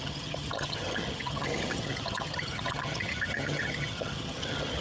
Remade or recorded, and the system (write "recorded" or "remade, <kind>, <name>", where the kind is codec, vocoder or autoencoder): remade, vocoder, HiFi-GAN